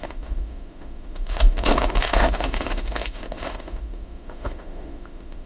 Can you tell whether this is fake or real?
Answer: fake